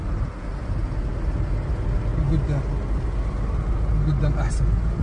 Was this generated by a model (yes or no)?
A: no